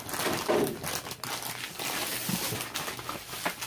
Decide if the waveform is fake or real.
real